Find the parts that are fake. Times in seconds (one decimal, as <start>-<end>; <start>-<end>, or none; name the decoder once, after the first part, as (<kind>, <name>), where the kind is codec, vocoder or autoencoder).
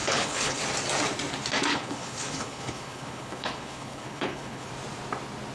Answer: 0.0-0.6 (codec, HILCodec); 1.7-4.7